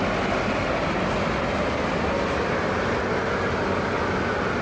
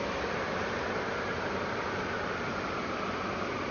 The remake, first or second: second